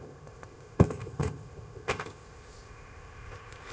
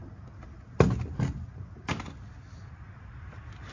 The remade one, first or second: first